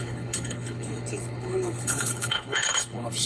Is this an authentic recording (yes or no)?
no